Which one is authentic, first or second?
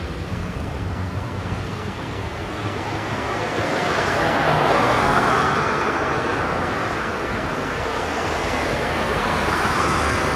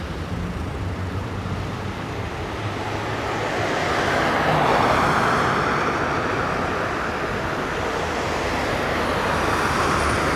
second